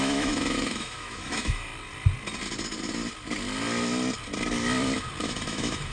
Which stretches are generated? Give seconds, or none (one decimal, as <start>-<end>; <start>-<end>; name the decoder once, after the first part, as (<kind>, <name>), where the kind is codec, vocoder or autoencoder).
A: 0.0-1.7 (autoencoder, DAC-VAE); 5.2-5.9